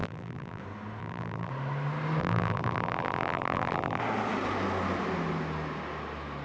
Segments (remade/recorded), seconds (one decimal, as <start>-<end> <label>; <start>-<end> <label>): 0.0-0.6 remade; 0.6-1.0 recorded; 1.0-1.5 remade; 1.5-2.2 recorded; 2.2-4.0 remade; 4.0-6.4 recorded